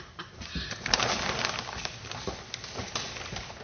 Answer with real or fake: real